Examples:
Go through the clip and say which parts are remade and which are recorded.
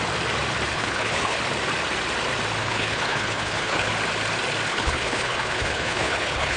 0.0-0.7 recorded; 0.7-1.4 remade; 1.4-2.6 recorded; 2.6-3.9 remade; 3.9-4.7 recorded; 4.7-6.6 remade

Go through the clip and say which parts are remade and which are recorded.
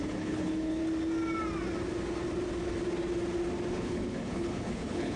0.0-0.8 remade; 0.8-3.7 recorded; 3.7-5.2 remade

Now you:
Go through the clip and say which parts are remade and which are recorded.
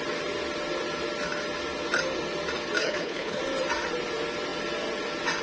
0.0-2.8 recorded; 2.8-3.4 remade; 3.4-5.4 recorded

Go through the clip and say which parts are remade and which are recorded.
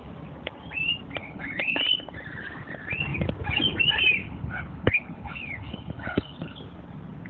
0.0-1.2 recorded; 1.2-1.8 remade; 1.8-4.2 recorded; 4.2-6.6 remade; 6.6-7.3 recorded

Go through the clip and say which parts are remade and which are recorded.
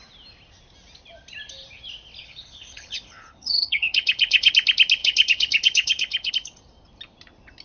0.0-2.2 recorded; 2.2-4.5 remade; 4.5-5.0 recorded; 5.0-6.3 remade; 6.3-7.6 recorded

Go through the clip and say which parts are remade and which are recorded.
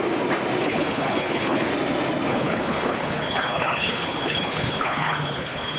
0.0-0.6 recorded; 0.6-1.7 remade; 1.7-2.3 recorded; 2.3-5.8 remade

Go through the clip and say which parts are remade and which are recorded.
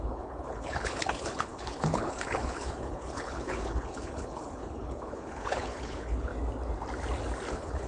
0.0-6.3 remade; 6.3-7.5 recorded; 7.5-7.9 remade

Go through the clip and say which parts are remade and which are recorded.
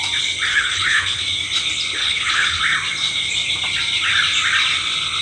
0.0-0.5 recorded; 0.5-1.2 remade; 1.2-2.0 recorded; 2.0-2.6 remade; 2.6-5.2 recorded